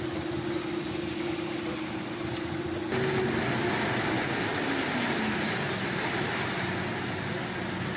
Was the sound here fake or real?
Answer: real